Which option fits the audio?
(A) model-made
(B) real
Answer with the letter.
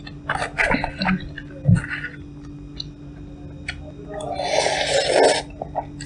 B